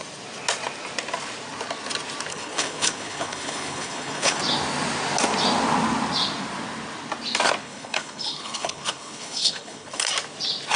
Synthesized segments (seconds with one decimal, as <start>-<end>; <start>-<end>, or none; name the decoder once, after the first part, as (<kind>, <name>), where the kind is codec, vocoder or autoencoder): 2.3-4.4 (codec, HILCodec); 7.6-10.1